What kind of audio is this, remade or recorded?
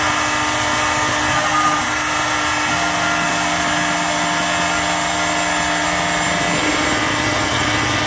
recorded